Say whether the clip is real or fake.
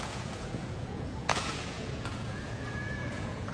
fake